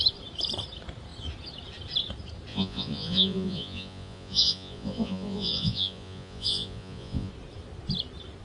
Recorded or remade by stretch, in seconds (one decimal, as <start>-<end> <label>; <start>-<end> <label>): 0.0-2.5 recorded; 2.5-7.3 remade; 7.3-8.4 recorded